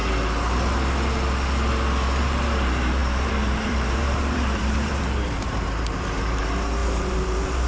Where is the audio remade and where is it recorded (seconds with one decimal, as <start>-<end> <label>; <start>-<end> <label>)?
0.0-2.2 recorded; 2.2-7.7 remade